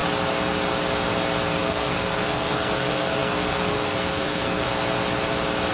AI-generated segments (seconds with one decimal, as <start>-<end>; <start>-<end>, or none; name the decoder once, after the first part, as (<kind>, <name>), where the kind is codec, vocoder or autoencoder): 1.6-4.7 (codec, SNAC)